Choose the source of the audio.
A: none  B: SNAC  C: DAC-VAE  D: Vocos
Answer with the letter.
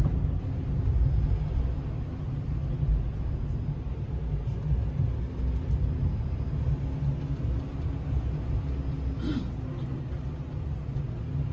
A